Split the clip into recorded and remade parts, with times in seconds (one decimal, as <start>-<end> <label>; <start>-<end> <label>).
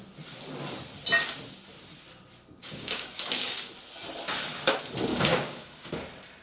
0.0-2.6 recorded; 2.6-3.7 remade; 3.7-5.1 recorded; 5.1-5.9 remade; 5.9-6.4 recorded